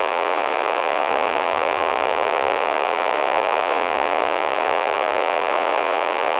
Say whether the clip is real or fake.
fake